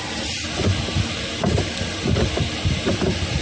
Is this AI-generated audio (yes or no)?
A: no